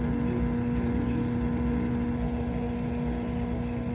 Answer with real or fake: real